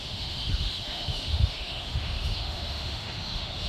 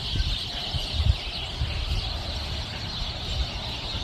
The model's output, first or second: first